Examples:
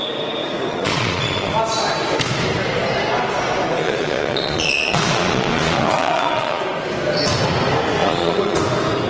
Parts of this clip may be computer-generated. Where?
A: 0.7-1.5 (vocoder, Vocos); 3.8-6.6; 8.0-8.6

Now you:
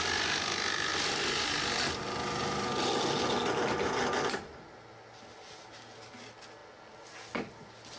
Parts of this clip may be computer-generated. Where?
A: none

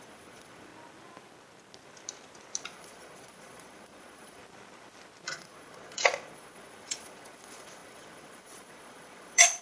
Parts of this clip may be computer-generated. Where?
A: 0.0-0.7 (vocoder, Vocos); 2.6-4.4; 5.3-9.6

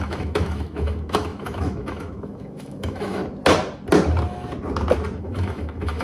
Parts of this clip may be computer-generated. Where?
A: 0.0-3.2 (autoencoder, DAC-VAE); 5.2-6.0

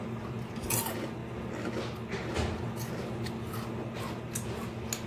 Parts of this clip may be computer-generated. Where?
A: none